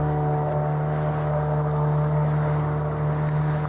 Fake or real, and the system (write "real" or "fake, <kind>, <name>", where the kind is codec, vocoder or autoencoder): real